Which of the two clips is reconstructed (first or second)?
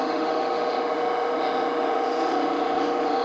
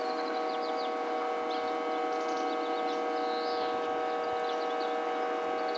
first